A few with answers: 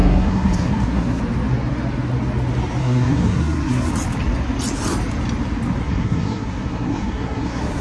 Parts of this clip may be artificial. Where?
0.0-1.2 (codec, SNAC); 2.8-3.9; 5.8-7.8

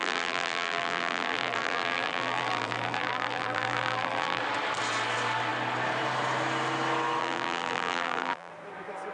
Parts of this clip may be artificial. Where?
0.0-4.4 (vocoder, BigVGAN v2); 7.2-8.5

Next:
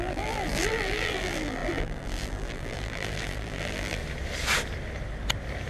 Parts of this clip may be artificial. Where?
0.0-4.0 (vocoder, BigVGAN v2)

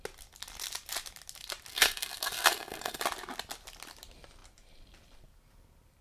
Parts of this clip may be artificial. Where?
1.7-3.0 (codec, SNAC)

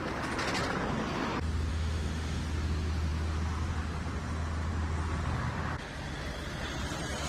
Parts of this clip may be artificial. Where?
1.7-2.4 (autoencoder, DAC-VAE)

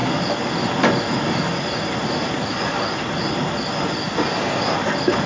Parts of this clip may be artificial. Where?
none

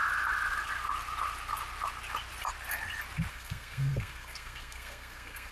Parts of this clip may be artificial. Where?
3.3-5.5 (codec, SNAC)

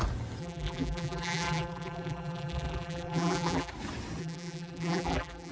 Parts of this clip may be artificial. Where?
0.4-3.7 (vocoder, BigVGAN v2); 4.2-5.5